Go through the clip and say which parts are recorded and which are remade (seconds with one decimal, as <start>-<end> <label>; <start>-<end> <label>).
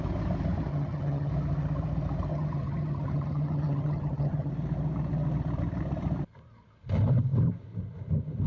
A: 0.0-0.7 recorded; 0.7-1.3 remade; 1.3-2.3 recorded; 2.3-4.5 remade; 4.5-8.5 recorded